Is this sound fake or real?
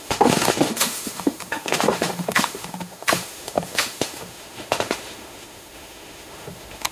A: fake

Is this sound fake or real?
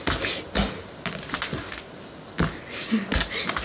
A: real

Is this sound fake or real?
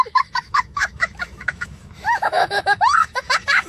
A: fake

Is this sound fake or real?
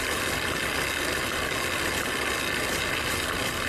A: real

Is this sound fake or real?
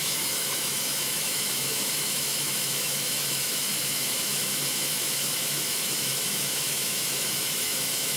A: fake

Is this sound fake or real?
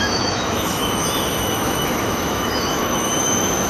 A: fake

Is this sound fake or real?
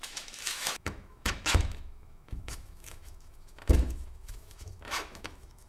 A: fake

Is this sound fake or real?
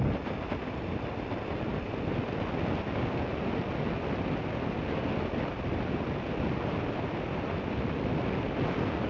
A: real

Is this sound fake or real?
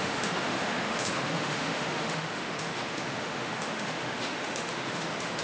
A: fake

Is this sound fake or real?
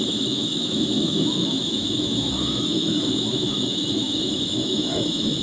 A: fake